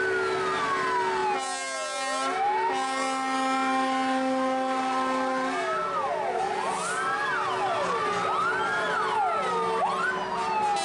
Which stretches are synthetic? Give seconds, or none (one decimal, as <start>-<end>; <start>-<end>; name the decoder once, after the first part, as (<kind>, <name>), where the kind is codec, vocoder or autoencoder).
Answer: none